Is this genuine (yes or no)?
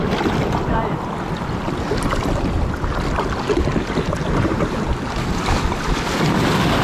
yes